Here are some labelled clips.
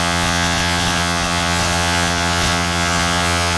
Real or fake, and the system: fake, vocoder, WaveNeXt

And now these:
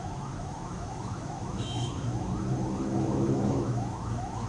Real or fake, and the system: fake, autoencoder, DAC-VAE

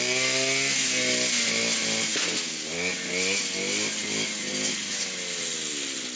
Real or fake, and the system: real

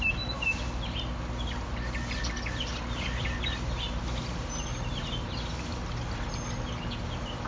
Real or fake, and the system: real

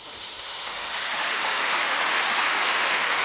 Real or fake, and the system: fake, autoencoder, DAC-VAE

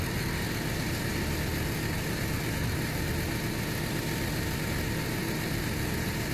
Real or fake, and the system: real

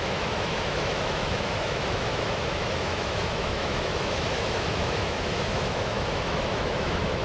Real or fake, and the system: fake, autoencoder, DAC-VAE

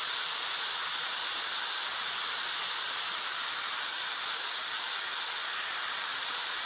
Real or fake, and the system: real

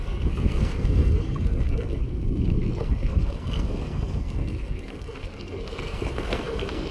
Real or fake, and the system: fake, codec, SNAC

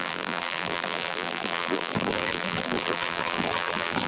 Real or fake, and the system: fake, vocoder, BigVGAN v2